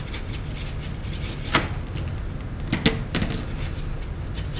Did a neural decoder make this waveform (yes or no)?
no